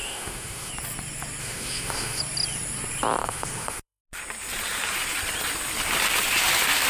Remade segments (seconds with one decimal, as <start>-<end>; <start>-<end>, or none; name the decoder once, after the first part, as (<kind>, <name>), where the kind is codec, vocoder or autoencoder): 0.0-0.7 (autoencoder, DAC-VAE); 1.4-2.2; 3.2-4.0